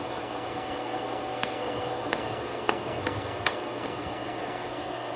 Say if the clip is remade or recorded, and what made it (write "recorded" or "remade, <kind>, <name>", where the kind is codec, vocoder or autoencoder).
remade, codec, SNAC